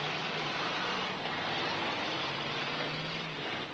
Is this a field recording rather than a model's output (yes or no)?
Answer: yes